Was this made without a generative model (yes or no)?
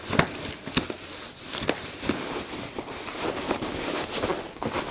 yes